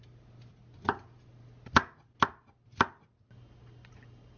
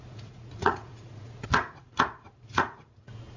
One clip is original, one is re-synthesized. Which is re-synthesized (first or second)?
second